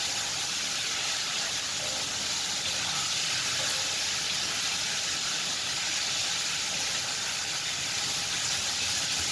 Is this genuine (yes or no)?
yes